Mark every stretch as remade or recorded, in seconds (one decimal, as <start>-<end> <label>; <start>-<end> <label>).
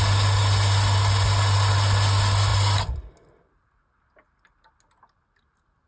0.0-5.9 recorded